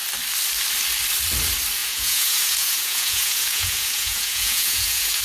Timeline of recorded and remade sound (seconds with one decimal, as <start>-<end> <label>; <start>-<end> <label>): 0.0-1.8 recorded; 1.8-5.2 remade